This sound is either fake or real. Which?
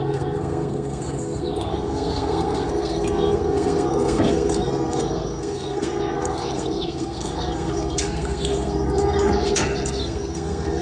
fake